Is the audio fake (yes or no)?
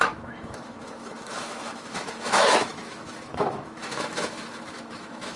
yes